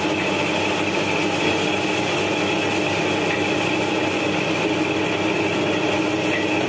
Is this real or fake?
real